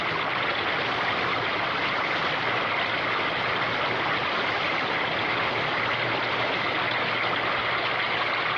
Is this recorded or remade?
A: recorded